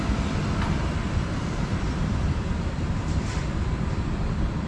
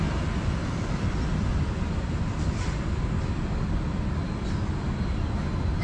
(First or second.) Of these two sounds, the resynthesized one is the first